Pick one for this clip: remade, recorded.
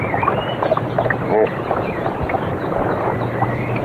recorded